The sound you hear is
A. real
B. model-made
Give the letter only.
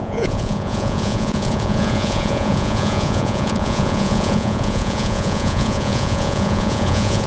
B